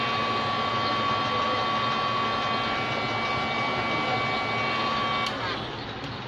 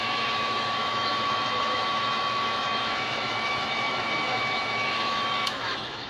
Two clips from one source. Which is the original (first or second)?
first